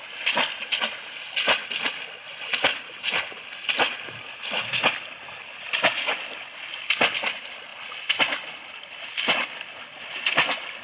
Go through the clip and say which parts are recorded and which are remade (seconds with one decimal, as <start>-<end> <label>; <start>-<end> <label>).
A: 0.0-10.8 recorded